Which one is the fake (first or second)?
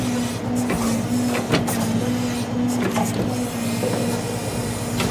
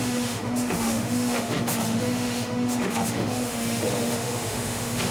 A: second